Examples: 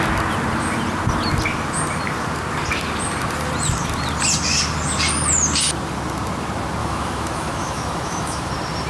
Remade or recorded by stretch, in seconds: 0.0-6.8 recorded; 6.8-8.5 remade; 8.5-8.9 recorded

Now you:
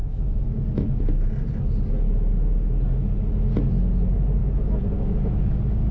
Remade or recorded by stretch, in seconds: 0.0-0.6 remade; 0.6-4.4 recorded; 4.4-5.4 remade; 5.4-5.9 recorded

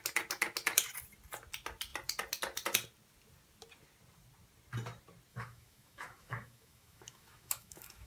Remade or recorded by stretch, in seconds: 0.0-5.3 recorded; 5.3-8.1 remade

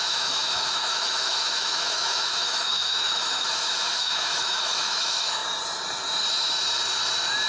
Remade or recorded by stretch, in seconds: 0.0-5.4 remade; 5.4-7.5 recorded

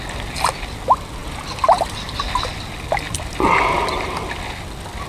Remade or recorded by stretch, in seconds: 0.0-5.1 recorded